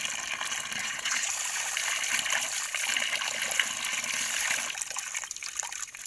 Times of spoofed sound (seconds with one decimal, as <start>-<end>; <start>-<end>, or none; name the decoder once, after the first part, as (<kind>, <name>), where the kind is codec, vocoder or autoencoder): 0.8-1.3 (vocoder, Vocos)